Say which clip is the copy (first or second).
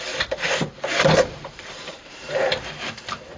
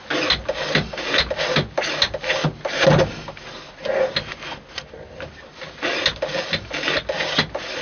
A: first